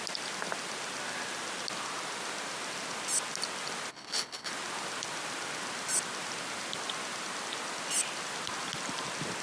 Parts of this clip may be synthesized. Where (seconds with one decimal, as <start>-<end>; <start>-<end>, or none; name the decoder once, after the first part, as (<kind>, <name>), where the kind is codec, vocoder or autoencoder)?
3.9-4.5 (codec, HILCodec)